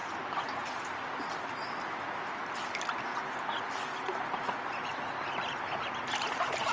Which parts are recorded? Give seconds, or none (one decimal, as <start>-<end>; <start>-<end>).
0.0-6.7